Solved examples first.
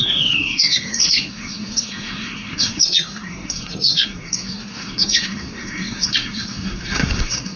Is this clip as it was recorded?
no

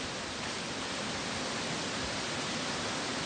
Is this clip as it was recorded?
yes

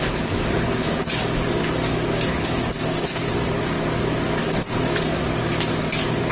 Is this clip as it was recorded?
no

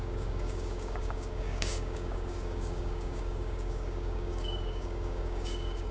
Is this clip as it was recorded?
no